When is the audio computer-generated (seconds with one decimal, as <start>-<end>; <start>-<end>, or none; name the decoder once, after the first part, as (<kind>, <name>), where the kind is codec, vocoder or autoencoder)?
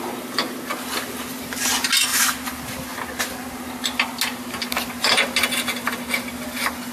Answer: none